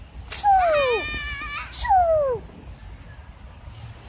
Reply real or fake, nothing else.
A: real